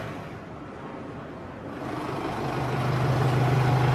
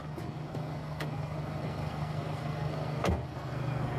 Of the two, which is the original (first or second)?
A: first